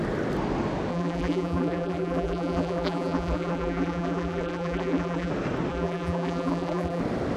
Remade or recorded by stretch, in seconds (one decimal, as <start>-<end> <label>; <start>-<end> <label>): 0.0-0.9 recorded; 0.9-5.3 remade; 5.3-5.7 recorded; 5.7-7.0 remade; 7.0-7.4 recorded